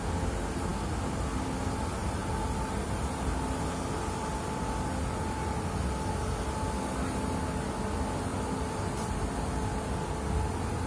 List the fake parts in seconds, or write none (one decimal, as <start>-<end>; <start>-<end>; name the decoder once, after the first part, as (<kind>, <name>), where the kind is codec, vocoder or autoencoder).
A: 8.3-9.5 (vocoder, BigVGAN v2)